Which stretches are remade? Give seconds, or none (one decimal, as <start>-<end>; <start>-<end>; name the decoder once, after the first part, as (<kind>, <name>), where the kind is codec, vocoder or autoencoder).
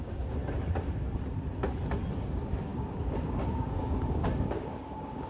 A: 0.0-0.4 (codec, DAC); 2.2-5.3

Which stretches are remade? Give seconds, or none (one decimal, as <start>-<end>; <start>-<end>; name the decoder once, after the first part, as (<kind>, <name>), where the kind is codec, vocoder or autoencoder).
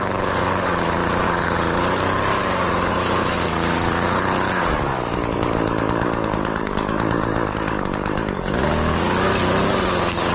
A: 0.0-0.7 (codec, DAC); 1.3-10.3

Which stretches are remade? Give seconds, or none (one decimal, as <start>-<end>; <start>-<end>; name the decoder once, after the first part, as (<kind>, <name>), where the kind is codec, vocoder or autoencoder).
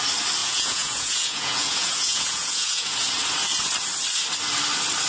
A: 0.4-3.1 (vocoder, Vocos)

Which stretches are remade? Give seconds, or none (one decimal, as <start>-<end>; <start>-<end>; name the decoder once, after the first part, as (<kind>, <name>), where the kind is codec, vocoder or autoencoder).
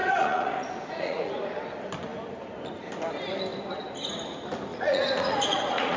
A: 0.0-1.3 (vocoder, Vocos); 4.7-6.0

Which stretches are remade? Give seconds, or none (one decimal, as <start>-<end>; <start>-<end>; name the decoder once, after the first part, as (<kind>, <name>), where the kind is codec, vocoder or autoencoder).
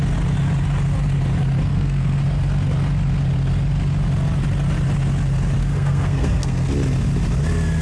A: 1.7-2.2 (codec, SNAC); 5.6-6.7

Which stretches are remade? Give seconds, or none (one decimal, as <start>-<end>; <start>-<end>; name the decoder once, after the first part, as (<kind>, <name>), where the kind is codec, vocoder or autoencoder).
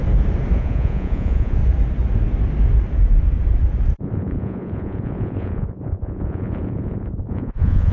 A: 0.6-1.6 (vocoder, Vocos); 4.0-7.9